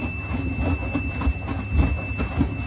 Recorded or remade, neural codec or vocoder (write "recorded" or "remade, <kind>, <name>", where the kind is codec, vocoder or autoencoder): recorded